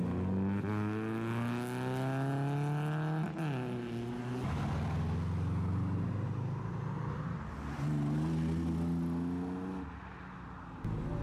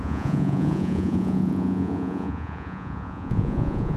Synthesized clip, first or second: second